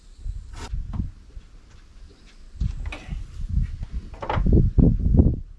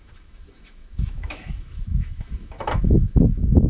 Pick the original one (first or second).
first